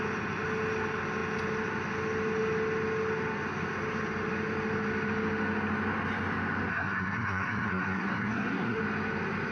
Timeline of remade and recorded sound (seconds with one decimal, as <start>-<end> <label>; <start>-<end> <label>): 0.0-6.7 recorded; 6.7-8.8 remade; 8.8-9.5 recorded